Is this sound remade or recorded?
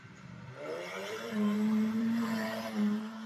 remade